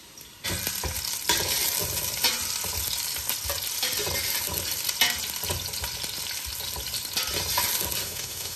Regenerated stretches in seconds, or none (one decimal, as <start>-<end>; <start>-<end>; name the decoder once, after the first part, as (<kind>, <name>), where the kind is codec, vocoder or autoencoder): 8.0-8.6 (autoencoder, DAC-VAE)